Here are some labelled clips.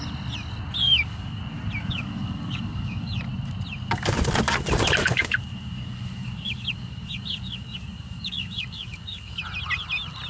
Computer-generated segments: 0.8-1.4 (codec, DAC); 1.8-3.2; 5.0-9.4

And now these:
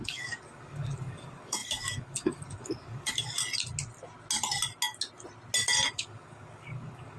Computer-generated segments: 0.0-3.4 (codec, DAC); 5.9-7.2

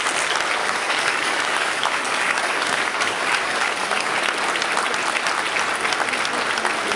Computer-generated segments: 0.6-4.1 (codec, DAC)